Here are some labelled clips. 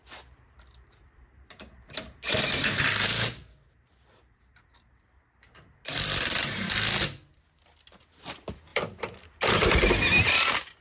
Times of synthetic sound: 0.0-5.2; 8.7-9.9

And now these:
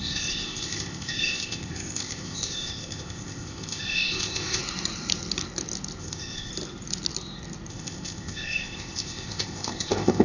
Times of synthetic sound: 0.0-4.6; 6.0-6.5; 7.7-10.2

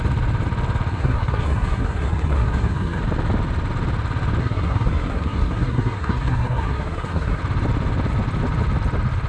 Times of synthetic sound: 0.9-3.0; 4.4-7.4

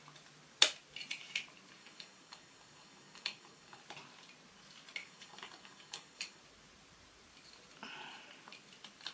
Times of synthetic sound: 1.8-3.8; 5.0-6.4

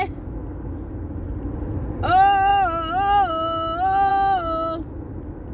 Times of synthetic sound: none

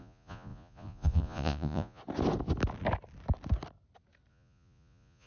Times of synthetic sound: 0.0-2.0; 4.3-5.3